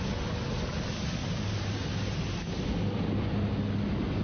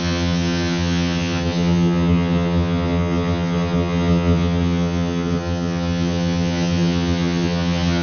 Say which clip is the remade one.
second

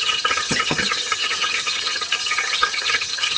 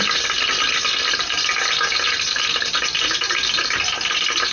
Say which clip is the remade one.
first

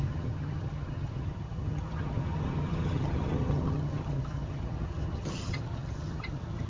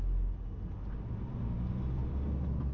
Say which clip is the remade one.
first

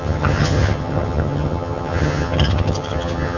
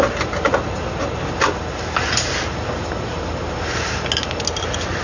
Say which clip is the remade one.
first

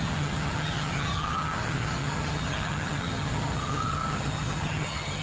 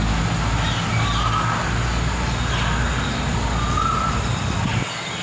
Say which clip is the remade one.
first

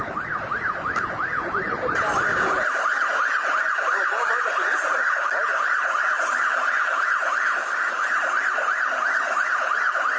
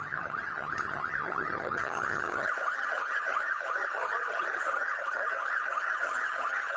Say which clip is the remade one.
second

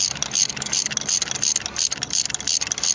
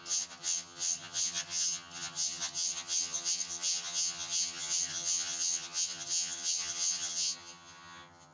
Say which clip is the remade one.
second